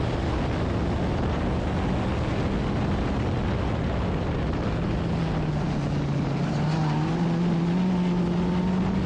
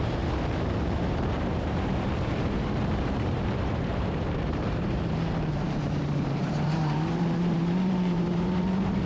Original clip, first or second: first